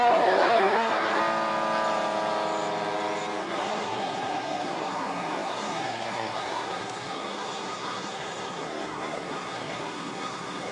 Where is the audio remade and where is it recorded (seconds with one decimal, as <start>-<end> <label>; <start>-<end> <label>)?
0.0-1.2 remade; 1.2-3.4 recorded; 3.4-10.7 remade